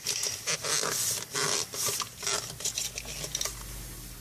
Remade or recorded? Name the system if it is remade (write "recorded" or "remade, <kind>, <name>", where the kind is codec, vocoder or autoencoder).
recorded